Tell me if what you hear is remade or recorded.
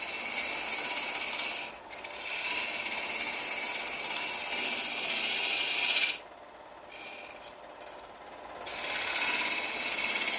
recorded